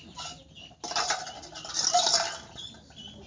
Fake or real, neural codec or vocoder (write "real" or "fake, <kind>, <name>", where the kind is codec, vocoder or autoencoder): real